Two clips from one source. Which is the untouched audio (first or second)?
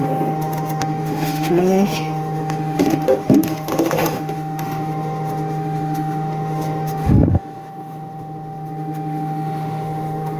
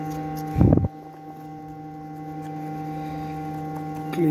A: second